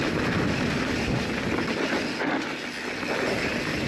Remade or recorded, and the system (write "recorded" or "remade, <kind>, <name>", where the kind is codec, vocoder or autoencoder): recorded